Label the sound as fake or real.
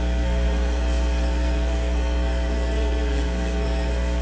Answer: fake